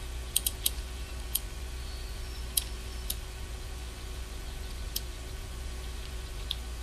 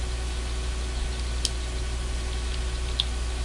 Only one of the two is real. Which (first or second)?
second